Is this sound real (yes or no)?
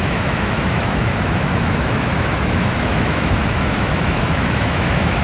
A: no